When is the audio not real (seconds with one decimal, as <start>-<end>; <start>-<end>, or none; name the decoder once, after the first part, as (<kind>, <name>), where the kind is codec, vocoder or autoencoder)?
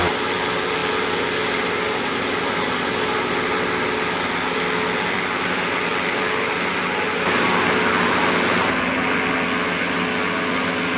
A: none